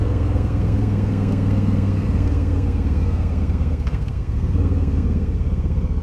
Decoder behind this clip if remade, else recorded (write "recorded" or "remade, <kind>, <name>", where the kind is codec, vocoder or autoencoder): remade, codec, SNAC